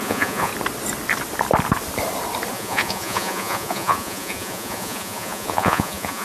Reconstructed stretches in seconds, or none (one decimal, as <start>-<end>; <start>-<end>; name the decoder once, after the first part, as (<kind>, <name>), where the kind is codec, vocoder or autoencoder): 0.0-0.5 (vocoder, Vocos); 2.5-6.2